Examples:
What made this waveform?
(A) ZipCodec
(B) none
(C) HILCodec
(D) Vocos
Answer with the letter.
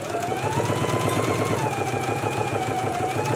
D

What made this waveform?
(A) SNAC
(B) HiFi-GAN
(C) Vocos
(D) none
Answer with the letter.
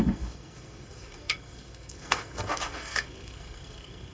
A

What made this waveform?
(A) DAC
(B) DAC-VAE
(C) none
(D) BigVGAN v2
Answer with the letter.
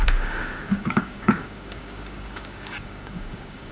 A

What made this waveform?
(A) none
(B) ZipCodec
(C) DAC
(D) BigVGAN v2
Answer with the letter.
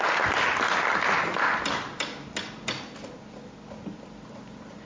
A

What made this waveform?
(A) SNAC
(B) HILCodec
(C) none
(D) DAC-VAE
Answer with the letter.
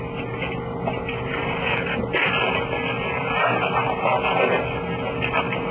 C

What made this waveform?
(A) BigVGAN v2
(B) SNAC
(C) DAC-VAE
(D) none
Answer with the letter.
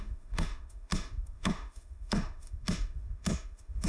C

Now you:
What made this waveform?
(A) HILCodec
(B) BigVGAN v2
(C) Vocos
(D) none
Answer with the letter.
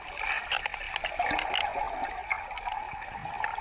D